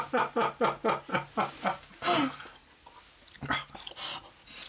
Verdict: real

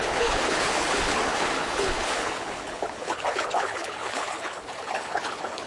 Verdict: fake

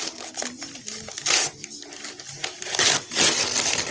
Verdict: real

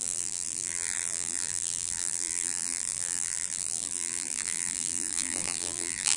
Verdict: fake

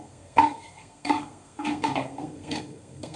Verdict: fake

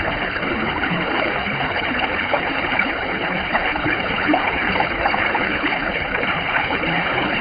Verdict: fake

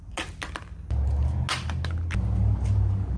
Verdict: real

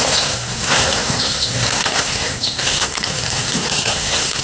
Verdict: fake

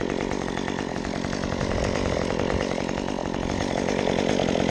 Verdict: fake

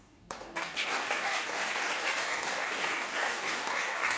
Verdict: fake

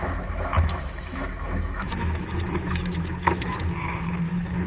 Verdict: fake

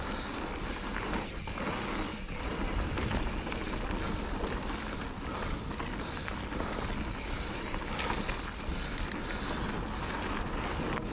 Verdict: real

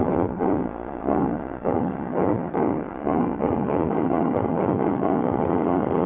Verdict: fake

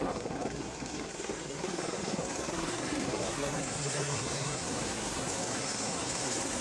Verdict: fake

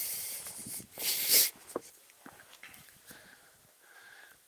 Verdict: fake